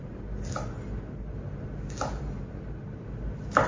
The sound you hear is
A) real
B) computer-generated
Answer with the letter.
A